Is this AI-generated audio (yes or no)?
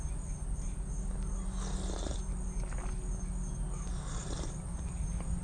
no